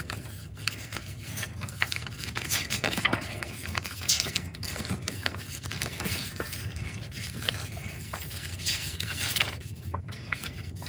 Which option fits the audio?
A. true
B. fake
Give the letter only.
B